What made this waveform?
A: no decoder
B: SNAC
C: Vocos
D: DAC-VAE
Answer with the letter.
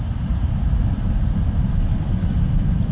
A